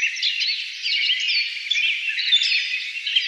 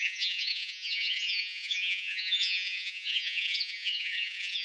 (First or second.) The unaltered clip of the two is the first